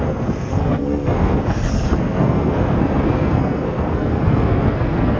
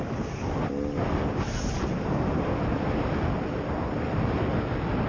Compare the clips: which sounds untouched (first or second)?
second